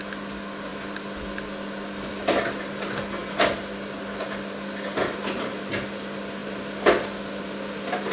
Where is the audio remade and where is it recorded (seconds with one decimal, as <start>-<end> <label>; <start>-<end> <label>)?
0.0-8.1 recorded